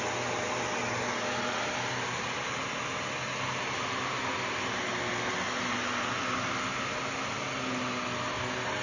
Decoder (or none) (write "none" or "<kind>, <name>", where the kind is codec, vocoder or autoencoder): none